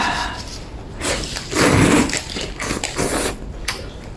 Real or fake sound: real